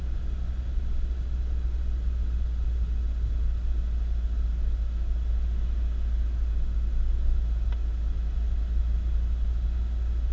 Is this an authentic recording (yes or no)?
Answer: yes